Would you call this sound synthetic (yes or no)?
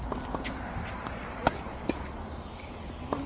no